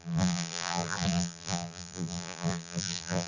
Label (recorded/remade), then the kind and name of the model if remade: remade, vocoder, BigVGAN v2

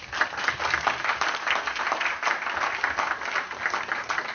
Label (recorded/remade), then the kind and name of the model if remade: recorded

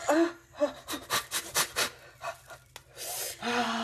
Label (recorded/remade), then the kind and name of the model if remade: recorded